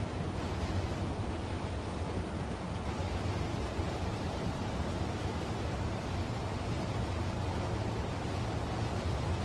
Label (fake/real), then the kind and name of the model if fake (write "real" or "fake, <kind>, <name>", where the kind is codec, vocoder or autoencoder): real